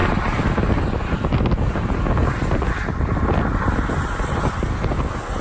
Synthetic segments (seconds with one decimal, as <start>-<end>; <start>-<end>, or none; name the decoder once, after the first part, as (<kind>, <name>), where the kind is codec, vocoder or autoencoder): none